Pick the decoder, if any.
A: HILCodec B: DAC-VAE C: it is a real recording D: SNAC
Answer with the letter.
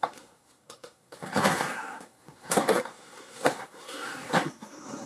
D